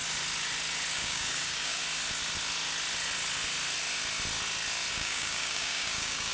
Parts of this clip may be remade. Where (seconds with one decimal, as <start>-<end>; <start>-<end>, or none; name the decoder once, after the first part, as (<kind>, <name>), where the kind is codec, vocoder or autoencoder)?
0.9-1.8 (codec, DAC); 4.9-6.3